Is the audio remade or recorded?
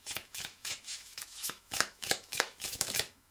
remade